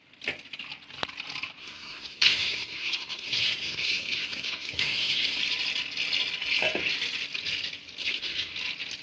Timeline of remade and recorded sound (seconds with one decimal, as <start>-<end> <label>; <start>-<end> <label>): 0.0-1.6 recorded; 1.6-5.4 remade; 5.4-8.0 recorded; 8.0-8.5 remade; 8.5-9.0 recorded